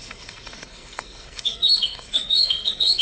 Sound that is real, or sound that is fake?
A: fake